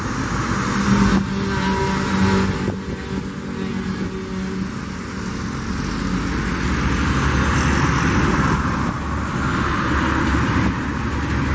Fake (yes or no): no